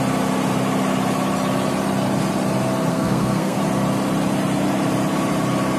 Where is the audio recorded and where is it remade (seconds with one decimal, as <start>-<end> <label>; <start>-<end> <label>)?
0.0-2.9 recorded; 2.9-3.6 remade; 3.6-5.8 recorded